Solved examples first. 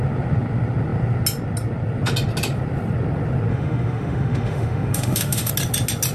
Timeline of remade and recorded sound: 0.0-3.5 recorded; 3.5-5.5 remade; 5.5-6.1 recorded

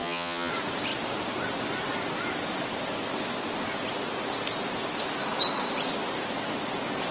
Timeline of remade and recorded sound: 0.0-0.5 remade; 0.5-7.1 recorded

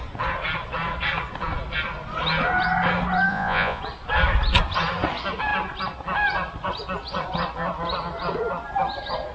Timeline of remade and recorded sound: 0.0-3.3 recorded; 3.3-3.8 remade; 3.8-9.3 recorded

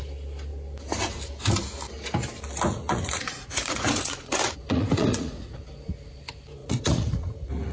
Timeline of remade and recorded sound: 0.0-2.7 recorded; 2.7-5.7 remade; 5.7-6.6 recorded; 6.6-7.3 remade; 7.3-7.7 recorded